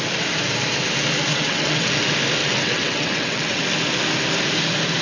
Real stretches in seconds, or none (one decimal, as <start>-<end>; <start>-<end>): 0.0-1.3; 1.9-2.4; 3.6-5.0